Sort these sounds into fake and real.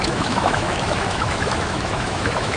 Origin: fake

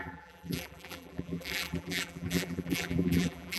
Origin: fake